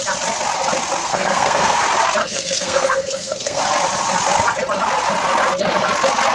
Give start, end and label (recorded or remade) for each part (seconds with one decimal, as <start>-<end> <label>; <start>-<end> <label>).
0.0-1.0 recorded; 1.0-1.8 remade; 1.8-2.2 recorded; 2.2-3.6 remade; 3.6-6.3 recorded